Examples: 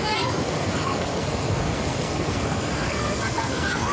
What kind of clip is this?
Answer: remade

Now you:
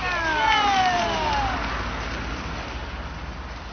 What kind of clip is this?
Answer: recorded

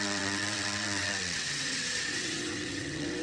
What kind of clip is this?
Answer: remade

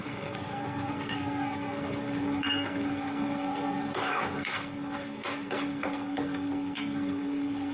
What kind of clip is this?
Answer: remade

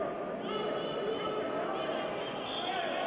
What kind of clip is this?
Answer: recorded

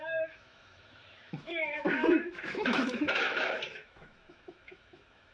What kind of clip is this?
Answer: remade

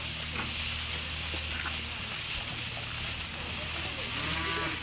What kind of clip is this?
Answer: recorded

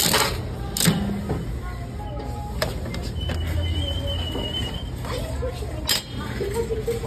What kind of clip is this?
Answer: recorded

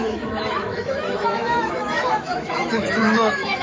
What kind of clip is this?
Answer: remade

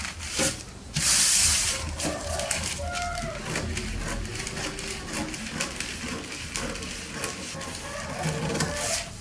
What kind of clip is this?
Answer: recorded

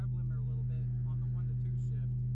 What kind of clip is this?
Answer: recorded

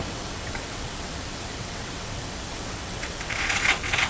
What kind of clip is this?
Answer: remade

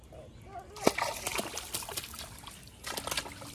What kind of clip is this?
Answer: recorded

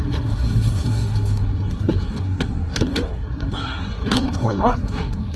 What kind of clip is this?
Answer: remade